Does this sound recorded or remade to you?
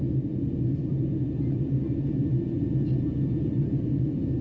recorded